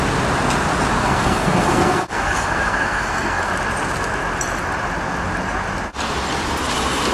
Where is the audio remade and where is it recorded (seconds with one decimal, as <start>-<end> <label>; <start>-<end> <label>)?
0.0-1.0 recorded; 1.0-3.5 remade; 3.5-7.1 recorded